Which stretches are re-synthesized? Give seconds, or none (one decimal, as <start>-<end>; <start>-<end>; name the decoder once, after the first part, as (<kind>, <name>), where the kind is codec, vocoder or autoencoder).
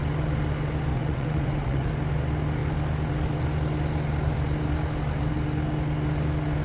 0.9-1.9 (vocoder, WaveNeXt)